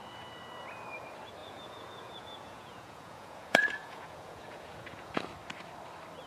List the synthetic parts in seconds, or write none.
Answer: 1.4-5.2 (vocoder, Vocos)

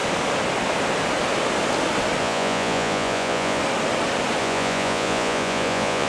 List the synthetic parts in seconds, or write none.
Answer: 2.2-3.6 (vocoder, Vocos); 4.4-6.1

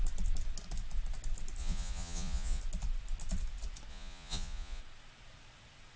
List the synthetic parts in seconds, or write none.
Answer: 1.6-2.6 (vocoder, Vocos); 3.9-4.8

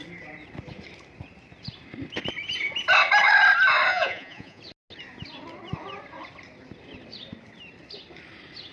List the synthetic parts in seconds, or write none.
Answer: 3.9-4.6 (vocoder, Vocos)

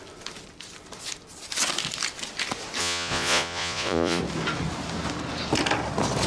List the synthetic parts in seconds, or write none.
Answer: 2.8-4.2 (vocoder, Vocos)

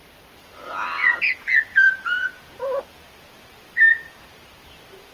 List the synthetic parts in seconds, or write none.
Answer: 1.0-2.8 (vocoder, Vocos)

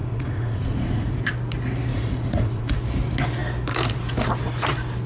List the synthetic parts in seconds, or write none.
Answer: 0.0-1.3 (vocoder, Vocos); 1.9-2.8

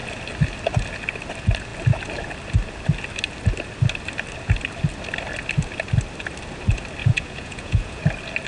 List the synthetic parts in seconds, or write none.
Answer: 7.0-8.0 (vocoder, Vocos)